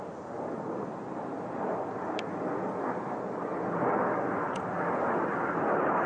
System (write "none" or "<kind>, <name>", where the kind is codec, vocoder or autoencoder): none